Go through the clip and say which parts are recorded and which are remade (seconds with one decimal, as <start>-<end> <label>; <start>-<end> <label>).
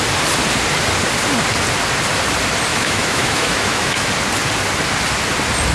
0.0-2.7 recorded; 2.7-4.1 remade; 4.1-5.7 recorded